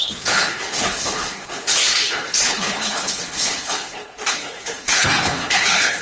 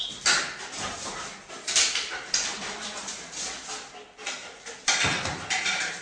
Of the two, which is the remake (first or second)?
first